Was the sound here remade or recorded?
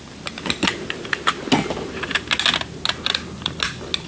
recorded